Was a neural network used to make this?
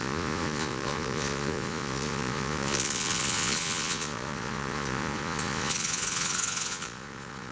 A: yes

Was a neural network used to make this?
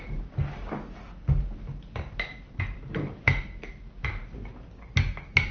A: no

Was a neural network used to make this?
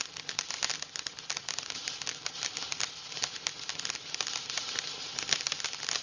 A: no